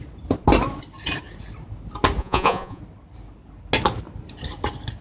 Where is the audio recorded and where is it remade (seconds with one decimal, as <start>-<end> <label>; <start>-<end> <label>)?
0.0-2.2 recorded; 2.2-2.8 remade; 2.8-5.0 recorded